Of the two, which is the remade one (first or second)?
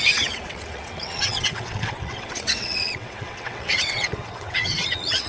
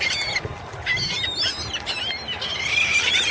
first